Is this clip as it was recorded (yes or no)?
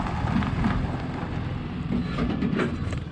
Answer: yes